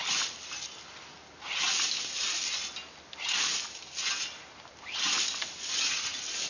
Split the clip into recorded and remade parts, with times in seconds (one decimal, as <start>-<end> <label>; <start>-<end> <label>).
0.0-6.5 recorded